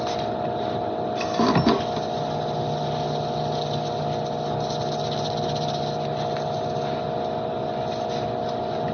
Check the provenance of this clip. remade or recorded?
recorded